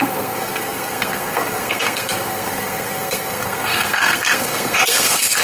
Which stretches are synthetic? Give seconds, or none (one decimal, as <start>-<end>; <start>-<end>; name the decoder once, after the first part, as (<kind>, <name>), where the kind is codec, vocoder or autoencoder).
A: 0.0-5.4 (codec, SNAC)